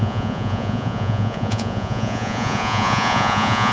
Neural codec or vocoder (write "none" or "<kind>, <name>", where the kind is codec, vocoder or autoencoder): vocoder, Vocos